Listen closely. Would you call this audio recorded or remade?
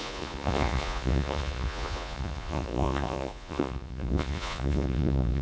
remade